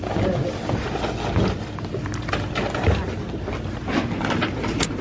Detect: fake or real real